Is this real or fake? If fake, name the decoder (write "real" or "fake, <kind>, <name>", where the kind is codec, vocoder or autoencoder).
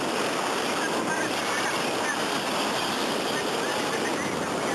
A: real